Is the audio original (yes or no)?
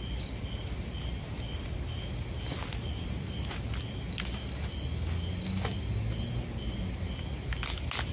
yes